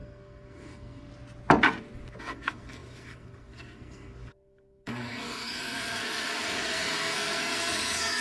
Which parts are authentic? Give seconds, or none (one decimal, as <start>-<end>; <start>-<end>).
1.1-2.2